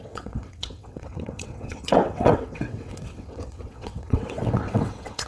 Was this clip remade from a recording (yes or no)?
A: yes